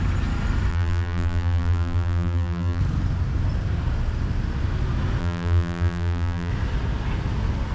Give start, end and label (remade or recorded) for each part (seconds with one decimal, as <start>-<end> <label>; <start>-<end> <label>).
0.0-0.7 recorded; 0.7-2.8 remade; 2.8-5.2 recorded; 5.2-6.5 remade; 6.5-7.7 recorded

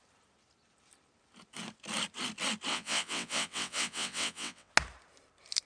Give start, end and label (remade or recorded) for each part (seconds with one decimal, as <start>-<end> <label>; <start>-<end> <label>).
0.0-2.7 recorded; 2.7-4.7 remade; 4.7-5.7 recorded

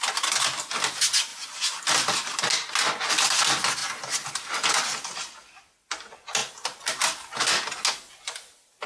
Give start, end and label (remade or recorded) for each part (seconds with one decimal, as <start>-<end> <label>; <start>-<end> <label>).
0.0-1.3 recorded; 1.3-1.8 remade; 1.8-8.9 recorded

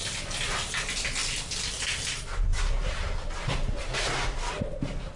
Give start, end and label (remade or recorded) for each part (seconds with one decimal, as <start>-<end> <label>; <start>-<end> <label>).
0.0-1.2 recorded; 1.2-1.8 remade; 1.8-2.5 recorded; 2.5-4.5 remade; 4.5-5.2 recorded

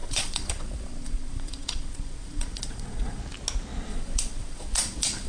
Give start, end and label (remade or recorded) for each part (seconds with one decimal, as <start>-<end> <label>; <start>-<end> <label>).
0.0-3.2 remade; 3.2-3.9 recorded; 3.9-5.3 remade